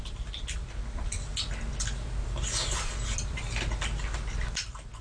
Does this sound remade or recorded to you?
recorded